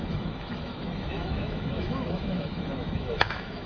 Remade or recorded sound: remade